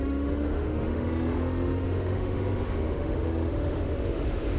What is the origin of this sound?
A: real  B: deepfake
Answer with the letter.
B